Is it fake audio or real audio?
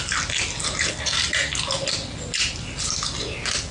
real